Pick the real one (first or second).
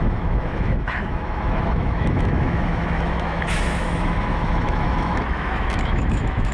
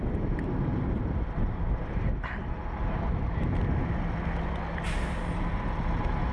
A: second